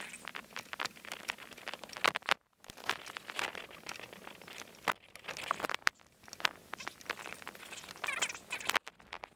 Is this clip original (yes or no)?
yes